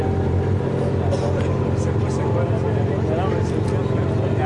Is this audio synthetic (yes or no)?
no